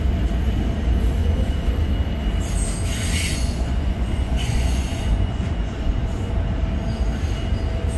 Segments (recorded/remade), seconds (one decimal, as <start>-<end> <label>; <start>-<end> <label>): 0.0-1.2 recorded; 1.2-1.9 remade; 1.9-3.3 recorded; 3.3-6.3 remade; 6.3-8.0 recorded

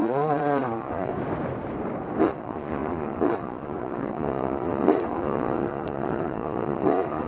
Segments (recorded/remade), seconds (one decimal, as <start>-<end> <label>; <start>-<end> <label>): 0.0-1.1 remade; 1.1-2.2 recorded; 2.2-7.3 remade

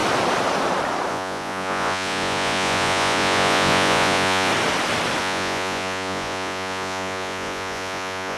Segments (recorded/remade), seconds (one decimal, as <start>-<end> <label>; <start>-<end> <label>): 0.0-1.1 recorded; 1.1-4.5 remade; 4.5-5.2 recorded; 5.2-8.4 remade

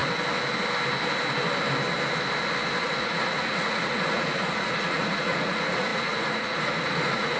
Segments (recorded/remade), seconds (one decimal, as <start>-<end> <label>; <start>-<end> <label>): 0.0-2.8 recorded; 2.8-7.4 remade